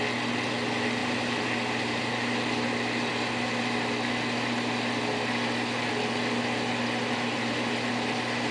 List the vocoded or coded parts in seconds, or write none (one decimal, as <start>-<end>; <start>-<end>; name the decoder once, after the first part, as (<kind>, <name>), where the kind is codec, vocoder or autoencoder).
1.0-2.1 (vocoder, BigVGAN v2); 7.0-7.9